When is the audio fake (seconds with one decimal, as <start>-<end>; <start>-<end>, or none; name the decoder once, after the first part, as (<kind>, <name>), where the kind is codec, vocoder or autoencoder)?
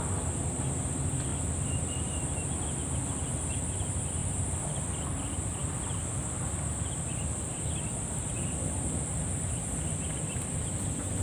none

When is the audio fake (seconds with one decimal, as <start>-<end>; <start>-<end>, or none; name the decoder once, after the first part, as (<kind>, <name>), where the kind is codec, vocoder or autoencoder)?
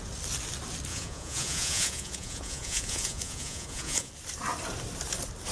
0.9-4.1 (vocoder, Vocos)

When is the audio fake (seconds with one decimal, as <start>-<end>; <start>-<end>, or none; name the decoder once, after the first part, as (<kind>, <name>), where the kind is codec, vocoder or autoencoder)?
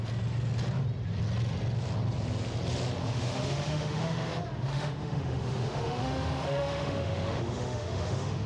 3.0-4.3 (autoencoder, DAC-VAE); 4.7-8.5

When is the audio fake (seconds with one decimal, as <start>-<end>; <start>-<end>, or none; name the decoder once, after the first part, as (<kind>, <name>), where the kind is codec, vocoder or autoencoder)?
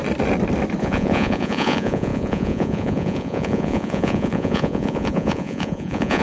0.8-6.2 (vocoder, Vocos)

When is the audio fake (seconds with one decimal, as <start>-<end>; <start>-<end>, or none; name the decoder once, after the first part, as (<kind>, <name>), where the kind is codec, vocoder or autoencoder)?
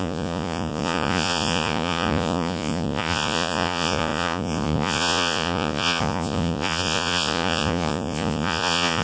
0.0-9.0 (vocoder, Vocos)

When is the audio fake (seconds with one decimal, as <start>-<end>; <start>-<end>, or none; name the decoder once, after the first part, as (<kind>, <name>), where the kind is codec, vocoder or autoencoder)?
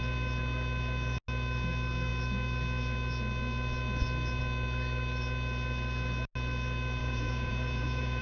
7.0-8.2 (vocoder, Vocos)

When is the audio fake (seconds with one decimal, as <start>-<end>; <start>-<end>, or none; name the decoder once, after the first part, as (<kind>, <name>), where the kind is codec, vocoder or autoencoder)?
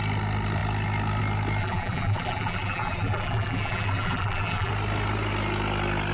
1.6-4.7 (vocoder, BigVGAN v2)